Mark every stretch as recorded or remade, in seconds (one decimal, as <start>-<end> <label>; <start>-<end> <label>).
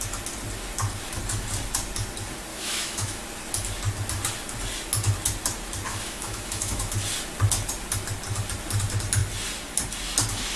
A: 0.0-2.5 recorded; 2.5-3.2 remade; 3.2-5.9 recorded; 5.9-6.9 remade; 6.9-10.6 recorded